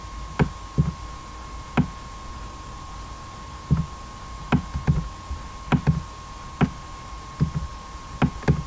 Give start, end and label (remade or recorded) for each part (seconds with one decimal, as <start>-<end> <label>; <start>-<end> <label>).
0.0-8.7 recorded